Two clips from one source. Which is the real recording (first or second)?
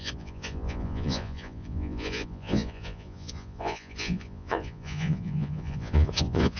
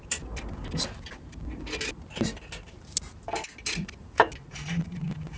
second